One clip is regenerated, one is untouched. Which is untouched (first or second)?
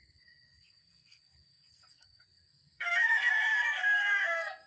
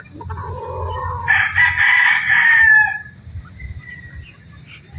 second